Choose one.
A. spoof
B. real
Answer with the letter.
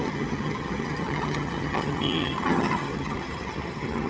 A